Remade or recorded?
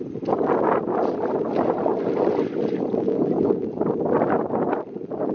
recorded